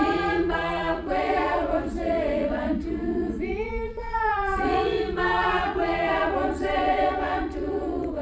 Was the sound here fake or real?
fake